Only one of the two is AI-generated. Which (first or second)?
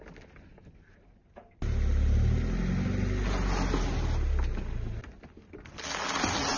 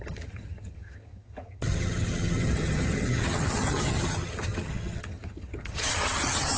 second